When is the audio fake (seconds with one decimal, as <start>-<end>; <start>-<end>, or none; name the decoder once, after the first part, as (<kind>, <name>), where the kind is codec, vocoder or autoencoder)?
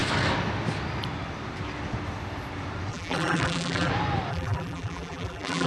2.9-3.9 (vocoder, BigVGAN v2); 4.3-5.7